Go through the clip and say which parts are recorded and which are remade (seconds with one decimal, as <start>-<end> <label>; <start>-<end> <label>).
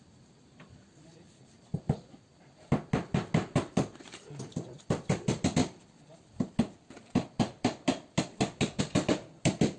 0.0-9.8 recorded